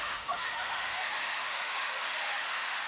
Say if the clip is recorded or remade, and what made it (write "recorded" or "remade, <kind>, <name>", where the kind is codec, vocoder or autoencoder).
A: remade, autoencoder, DAC-VAE